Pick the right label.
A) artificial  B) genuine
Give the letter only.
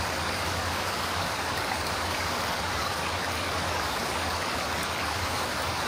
A